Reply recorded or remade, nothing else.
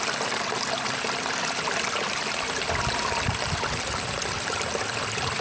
recorded